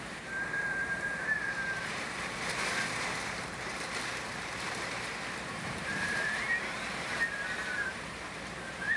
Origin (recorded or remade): remade